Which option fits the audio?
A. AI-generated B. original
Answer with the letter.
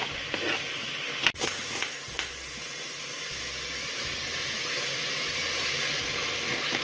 B